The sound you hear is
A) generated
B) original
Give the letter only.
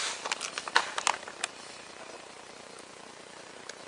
B